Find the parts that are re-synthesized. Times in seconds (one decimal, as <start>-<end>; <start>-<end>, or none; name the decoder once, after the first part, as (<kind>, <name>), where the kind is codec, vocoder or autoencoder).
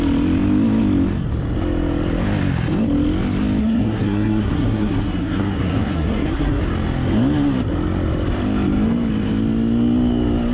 3.6-6.6 (codec, SNAC)